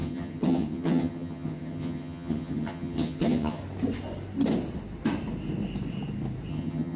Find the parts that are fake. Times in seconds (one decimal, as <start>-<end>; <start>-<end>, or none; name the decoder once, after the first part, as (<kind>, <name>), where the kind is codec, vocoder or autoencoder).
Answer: 0.0-3.6 (vocoder, HiFi-GAN); 6.5-7.0